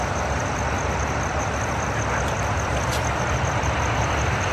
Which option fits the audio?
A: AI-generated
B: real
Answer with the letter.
B